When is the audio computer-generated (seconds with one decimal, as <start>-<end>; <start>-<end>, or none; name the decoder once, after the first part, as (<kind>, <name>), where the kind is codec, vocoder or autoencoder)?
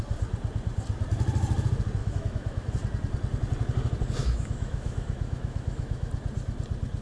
2.0-2.7 (autoencoder, DAC-VAE); 4.2-6.1